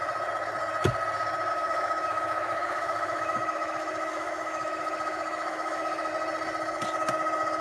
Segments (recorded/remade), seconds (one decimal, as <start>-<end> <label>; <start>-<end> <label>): 0.0-1.5 recorded; 1.5-6.1 remade; 6.1-7.6 recorded